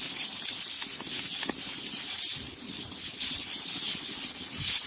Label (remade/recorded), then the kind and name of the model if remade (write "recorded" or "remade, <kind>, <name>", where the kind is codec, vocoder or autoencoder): recorded